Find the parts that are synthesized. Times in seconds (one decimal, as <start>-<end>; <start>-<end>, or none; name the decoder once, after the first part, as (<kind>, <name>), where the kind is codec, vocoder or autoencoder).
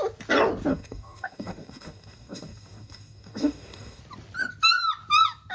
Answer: 0.7-4.0 (codec, DAC)